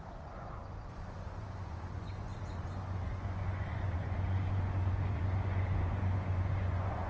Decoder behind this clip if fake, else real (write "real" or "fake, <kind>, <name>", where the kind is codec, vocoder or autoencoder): fake, vocoder, Vocos